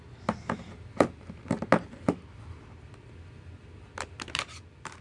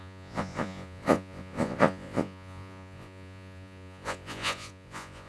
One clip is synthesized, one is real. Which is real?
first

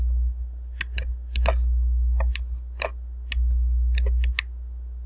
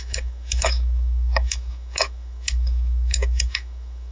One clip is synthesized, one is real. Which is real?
first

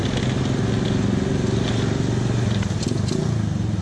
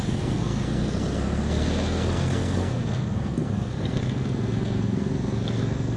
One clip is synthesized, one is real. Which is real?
first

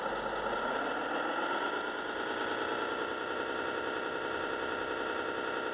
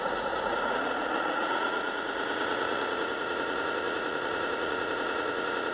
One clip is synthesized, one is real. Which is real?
first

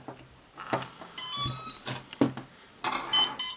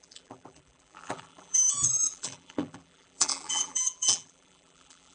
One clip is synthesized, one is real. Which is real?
first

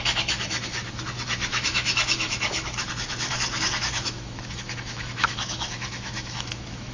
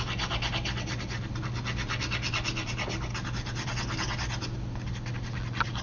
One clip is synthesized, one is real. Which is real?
second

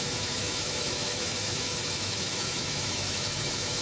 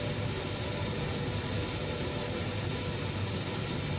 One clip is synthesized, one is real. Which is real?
second